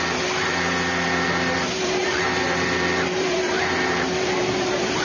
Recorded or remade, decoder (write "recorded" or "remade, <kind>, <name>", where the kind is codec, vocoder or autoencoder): remade, vocoder, BigVGAN v2